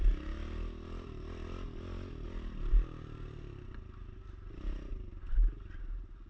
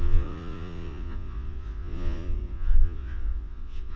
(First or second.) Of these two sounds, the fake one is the second